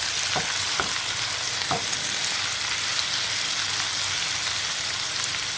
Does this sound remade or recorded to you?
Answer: recorded